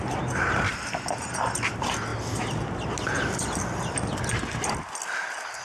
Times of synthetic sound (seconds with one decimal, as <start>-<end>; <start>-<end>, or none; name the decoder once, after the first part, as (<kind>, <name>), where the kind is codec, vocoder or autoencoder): none